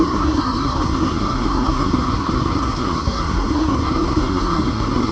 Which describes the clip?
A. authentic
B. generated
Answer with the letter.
B